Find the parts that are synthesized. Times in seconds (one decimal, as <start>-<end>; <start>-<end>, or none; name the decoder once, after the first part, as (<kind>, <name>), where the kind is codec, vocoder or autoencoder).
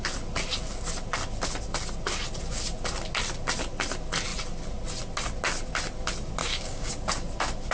6.4-6.9 (codec, DAC)